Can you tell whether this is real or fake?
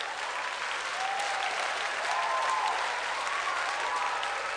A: real